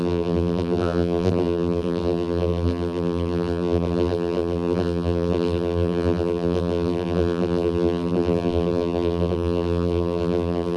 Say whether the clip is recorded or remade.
remade